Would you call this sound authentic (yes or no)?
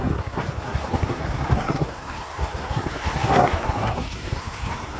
no